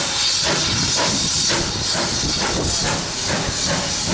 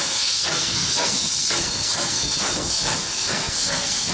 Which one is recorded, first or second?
first